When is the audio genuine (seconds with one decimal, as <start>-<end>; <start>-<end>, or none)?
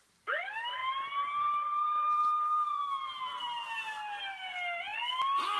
0.0-0.8; 4.2-5.6